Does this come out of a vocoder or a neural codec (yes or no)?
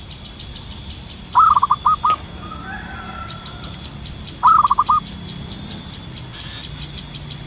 no